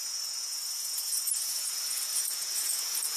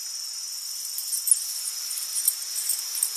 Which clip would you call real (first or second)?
second